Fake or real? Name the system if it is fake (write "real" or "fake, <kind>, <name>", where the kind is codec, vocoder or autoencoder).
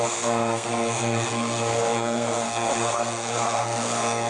fake, codec, SNAC